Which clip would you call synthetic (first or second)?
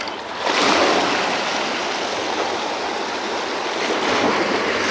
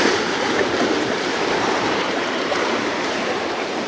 second